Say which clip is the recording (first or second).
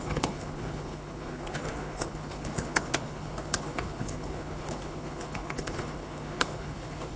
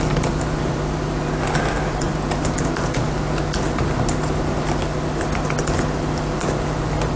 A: second